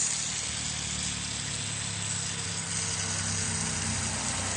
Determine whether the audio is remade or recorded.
recorded